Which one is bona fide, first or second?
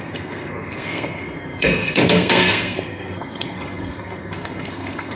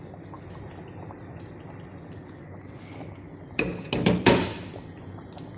second